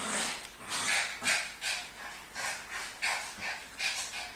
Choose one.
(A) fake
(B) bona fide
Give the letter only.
B